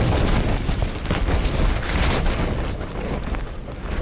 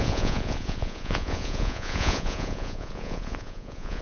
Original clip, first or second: first